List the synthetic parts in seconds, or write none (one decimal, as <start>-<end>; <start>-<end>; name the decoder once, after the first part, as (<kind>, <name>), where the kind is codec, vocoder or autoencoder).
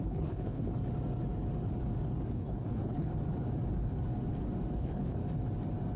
0.0-0.7 (codec, HILCodec); 2.3-3.1; 4.8-5.2